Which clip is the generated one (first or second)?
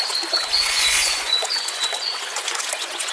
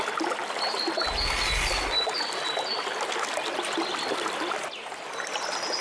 first